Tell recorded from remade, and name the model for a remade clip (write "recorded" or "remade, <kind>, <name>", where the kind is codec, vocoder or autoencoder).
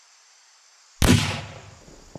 recorded